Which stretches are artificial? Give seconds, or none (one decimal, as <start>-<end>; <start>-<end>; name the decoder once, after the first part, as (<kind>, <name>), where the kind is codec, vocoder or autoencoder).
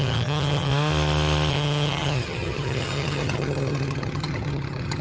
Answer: 0.0-0.7 (vocoder, HiFi-GAN); 1.5-5.0